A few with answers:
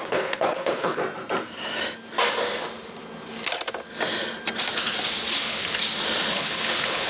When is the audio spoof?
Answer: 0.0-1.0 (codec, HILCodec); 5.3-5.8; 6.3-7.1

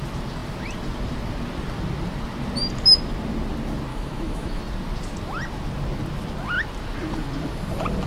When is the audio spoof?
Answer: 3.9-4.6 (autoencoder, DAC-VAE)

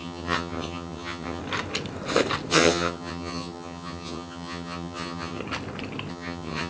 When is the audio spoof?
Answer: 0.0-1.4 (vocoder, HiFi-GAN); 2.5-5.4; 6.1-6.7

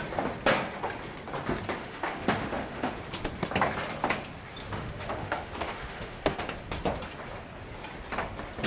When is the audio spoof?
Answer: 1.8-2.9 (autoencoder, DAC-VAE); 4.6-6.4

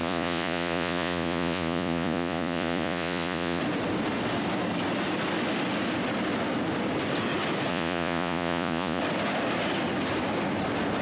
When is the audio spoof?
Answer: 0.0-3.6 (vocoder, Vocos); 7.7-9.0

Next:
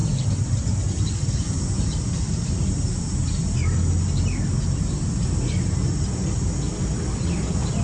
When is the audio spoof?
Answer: none